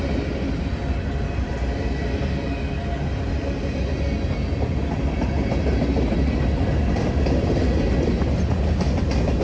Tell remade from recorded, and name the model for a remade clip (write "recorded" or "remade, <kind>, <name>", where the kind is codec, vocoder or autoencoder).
recorded